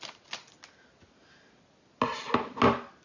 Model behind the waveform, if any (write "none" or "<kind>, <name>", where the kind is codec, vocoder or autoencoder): none